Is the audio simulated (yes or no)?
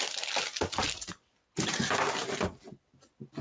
no